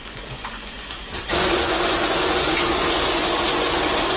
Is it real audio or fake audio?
fake